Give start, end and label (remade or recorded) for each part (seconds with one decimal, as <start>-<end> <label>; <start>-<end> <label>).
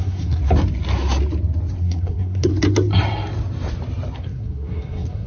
0.0-0.4 remade; 0.4-1.8 recorded; 1.8-2.5 remade; 2.5-4.2 recorded; 4.2-5.3 remade